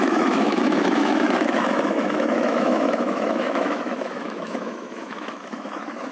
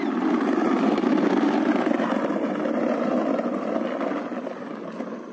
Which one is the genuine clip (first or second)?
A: second